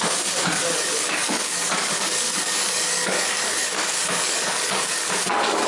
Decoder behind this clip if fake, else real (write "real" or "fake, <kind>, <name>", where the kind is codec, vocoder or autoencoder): fake, codec, DAC